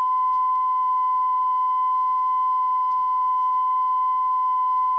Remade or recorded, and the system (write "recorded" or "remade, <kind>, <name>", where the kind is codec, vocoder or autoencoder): remade, codec, DAC